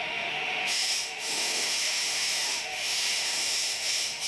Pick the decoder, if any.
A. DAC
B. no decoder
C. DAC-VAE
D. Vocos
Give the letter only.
C